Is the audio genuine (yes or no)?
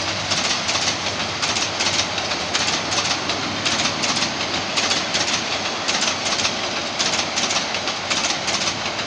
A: yes